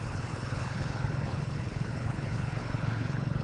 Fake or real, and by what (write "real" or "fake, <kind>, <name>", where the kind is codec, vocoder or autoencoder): fake, codec, HILCodec